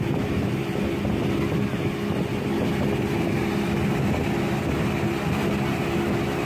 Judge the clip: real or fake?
real